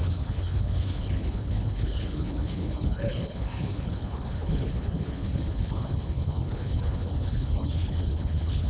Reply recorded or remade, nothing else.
remade